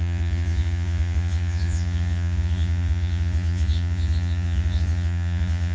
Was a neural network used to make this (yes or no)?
yes